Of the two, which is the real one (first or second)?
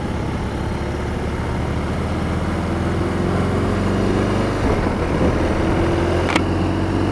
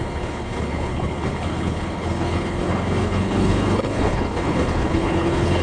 first